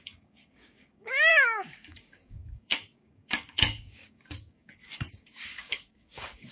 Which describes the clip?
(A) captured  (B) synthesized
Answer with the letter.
B